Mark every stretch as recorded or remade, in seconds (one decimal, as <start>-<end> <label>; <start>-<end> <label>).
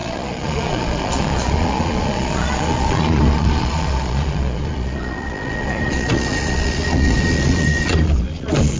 0.0-8.8 remade